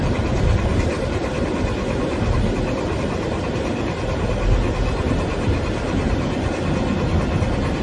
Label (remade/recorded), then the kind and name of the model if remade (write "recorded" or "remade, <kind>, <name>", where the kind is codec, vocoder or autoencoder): recorded